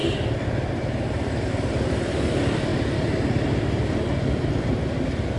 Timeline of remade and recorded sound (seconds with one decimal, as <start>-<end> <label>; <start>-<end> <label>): 0.0-0.7 remade; 0.7-5.4 recorded